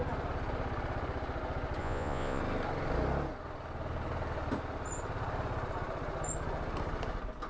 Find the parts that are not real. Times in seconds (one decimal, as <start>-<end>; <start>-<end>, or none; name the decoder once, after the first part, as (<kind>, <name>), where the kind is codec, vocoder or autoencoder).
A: 1.8-2.4 (vocoder, Vocos)